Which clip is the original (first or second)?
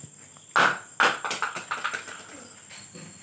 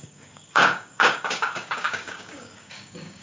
first